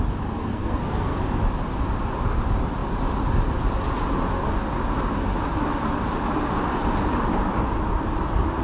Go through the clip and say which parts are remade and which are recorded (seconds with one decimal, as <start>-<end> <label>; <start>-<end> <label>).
0.0-0.4 recorded; 0.4-1.2 remade; 1.2-8.6 recorded